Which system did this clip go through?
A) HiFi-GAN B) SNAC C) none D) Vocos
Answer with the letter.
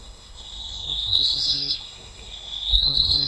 B